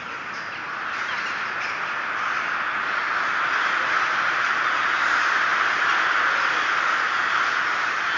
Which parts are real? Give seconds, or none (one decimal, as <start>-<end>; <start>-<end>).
0.0-8.2